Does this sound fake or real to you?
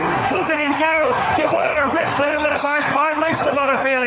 fake